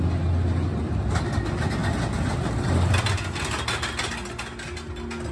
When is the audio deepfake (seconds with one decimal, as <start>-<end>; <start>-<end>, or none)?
none